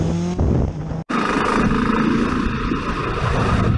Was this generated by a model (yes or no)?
no